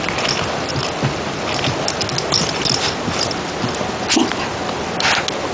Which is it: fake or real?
real